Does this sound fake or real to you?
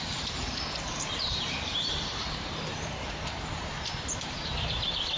fake